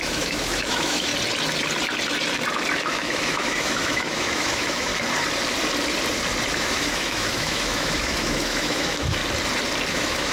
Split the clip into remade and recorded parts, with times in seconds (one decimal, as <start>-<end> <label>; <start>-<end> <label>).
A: 0.0-1.1 remade; 1.1-2.8 recorded; 2.8-4.9 remade; 4.9-6.6 recorded; 6.6-9.2 remade; 9.2-9.9 recorded; 9.9-10.3 remade